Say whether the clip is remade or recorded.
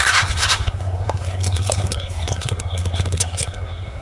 remade